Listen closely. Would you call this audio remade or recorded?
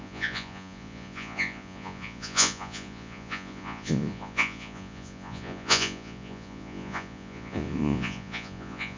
remade